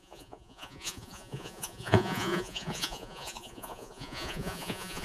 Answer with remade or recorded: remade